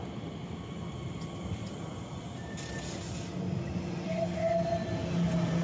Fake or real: real